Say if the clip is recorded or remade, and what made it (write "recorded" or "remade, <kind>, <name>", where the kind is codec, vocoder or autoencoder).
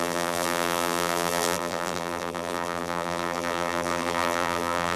remade, vocoder, BigVGAN v2